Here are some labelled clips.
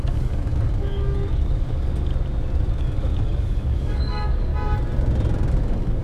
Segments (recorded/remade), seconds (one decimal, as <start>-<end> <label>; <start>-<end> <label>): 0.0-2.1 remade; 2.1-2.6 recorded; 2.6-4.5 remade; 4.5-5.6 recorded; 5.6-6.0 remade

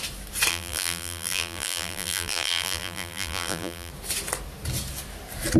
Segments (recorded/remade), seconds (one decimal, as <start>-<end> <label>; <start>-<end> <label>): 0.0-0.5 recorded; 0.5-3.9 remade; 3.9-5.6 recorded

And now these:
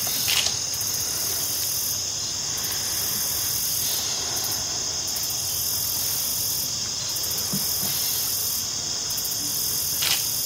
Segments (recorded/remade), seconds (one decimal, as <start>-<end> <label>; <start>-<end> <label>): 0.0-10.5 recorded

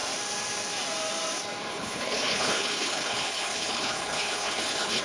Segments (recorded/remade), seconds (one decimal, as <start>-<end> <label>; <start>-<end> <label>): 0.0-1.7 recorded; 1.7-5.0 remade

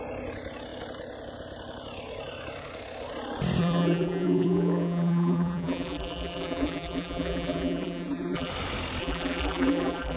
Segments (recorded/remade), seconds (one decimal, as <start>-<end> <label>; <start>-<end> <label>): 0.0-3.6 recorded; 3.6-8.5 remade; 8.5-9.0 recorded; 9.0-10.2 remade